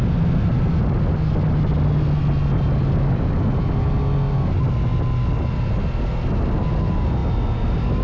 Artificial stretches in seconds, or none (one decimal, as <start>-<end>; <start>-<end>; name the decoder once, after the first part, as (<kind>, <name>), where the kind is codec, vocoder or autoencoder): none